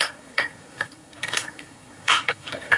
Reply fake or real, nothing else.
fake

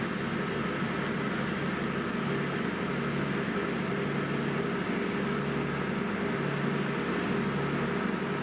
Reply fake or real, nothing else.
real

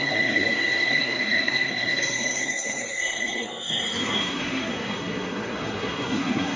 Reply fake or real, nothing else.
fake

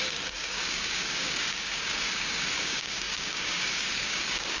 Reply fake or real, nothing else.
fake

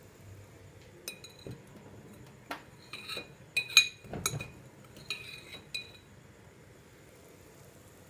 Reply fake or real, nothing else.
real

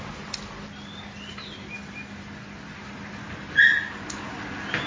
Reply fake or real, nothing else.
real